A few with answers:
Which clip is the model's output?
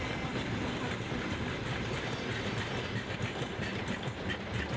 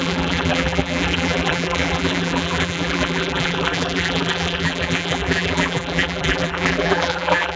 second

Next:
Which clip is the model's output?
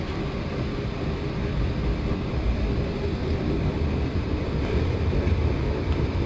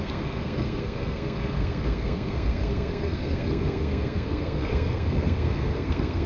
second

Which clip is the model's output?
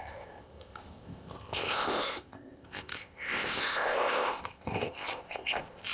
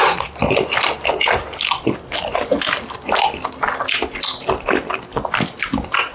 first